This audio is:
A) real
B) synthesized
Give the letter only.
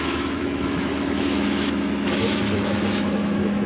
B